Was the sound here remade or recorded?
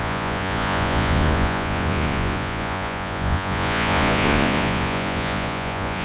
remade